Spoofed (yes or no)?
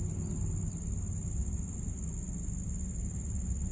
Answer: no